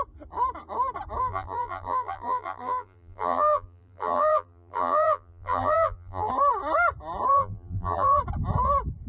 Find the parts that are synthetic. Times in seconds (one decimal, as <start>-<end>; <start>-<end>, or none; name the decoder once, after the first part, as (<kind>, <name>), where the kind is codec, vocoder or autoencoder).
1.2-6.3 (vocoder, BigVGAN v2); 7.3-8.2